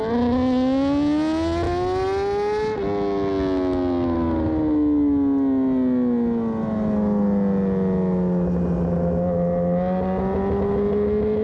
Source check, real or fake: real